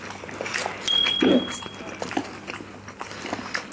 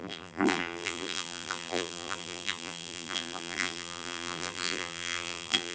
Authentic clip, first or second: first